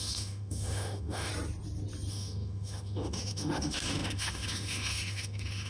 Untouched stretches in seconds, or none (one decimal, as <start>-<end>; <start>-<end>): 1.3-2.1